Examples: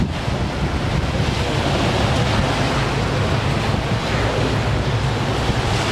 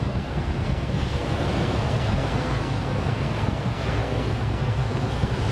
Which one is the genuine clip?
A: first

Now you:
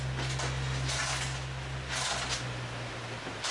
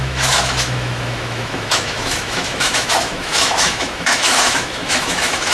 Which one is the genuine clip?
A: first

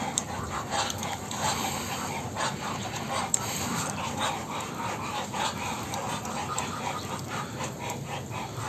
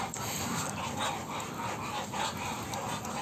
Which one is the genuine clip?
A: second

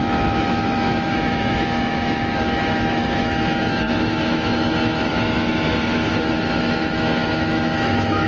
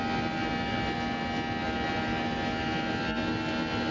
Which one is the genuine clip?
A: second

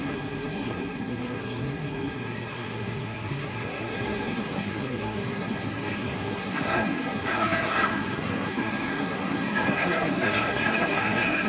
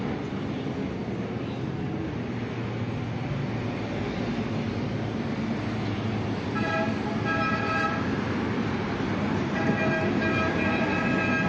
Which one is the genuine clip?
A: second